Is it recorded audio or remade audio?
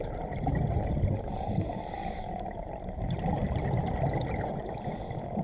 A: recorded